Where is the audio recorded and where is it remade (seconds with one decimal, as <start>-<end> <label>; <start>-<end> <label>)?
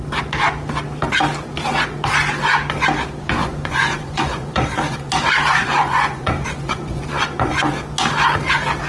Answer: 0.0-3.4 recorded; 3.4-5.1 remade; 5.1-5.5 recorded; 5.5-7.7 remade; 7.7-8.9 recorded